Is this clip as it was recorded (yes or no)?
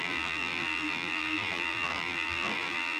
no